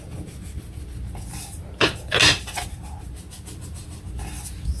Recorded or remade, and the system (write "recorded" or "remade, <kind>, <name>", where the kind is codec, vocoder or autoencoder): recorded